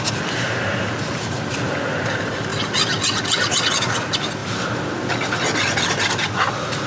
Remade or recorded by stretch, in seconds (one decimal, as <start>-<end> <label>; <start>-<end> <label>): 0.0-6.9 recorded

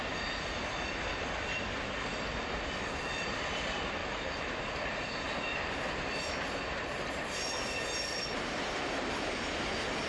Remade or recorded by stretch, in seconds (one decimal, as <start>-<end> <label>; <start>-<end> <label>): 0.0-4.0 recorded; 4.0-4.6 remade; 4.6-10.1 recorded

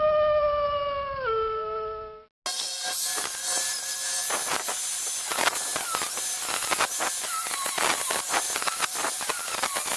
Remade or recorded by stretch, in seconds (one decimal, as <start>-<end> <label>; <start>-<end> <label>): 0.0-10.0 recorded

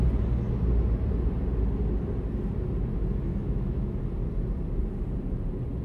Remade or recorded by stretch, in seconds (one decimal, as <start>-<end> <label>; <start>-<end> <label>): 0.0-3.3 recorded; 3.3-4.0 remade; 4.0-5.8 recorded

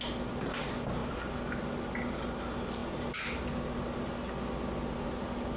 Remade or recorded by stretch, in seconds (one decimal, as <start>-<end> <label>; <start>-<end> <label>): 0.0-5.6 recorded

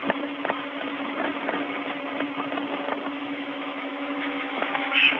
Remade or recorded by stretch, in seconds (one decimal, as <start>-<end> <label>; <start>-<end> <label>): 0.0-3.1 recorded; 3.1-5.2 remade

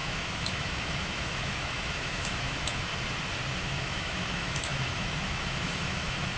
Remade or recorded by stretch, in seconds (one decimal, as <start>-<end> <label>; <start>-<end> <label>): 0.0-2.9 remade; 2.9-3.6 recorded; 3.6-6.4 remade

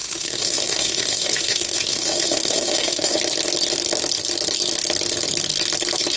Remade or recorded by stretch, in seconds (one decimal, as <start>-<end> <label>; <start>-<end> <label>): 0.0-3.2 remade; 3.2-6.2 recorded